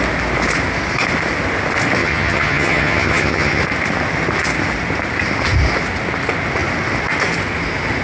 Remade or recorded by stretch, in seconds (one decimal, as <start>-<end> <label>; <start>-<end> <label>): 0.0-2.0 recorded; 2.0-3.6 remade; 3.6-8.0 recorded